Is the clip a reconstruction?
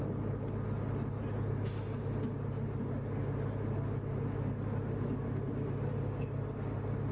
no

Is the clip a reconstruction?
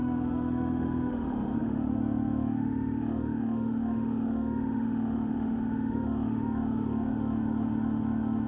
yes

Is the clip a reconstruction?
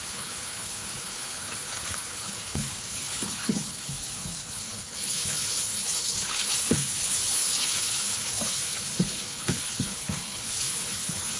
yes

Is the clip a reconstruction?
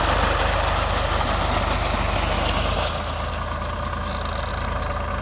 no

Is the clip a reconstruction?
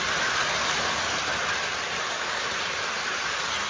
no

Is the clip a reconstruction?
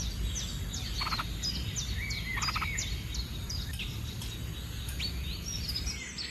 no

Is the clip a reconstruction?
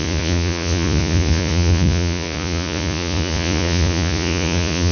yes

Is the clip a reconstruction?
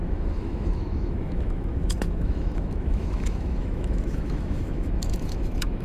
yes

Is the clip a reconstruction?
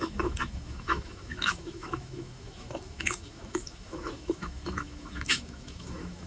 yes